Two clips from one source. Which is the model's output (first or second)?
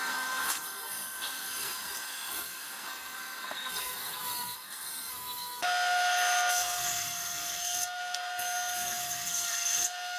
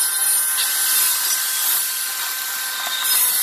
first